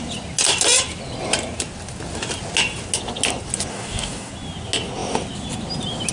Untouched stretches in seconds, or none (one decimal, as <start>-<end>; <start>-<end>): 0.0-3.7; 4.3-6.1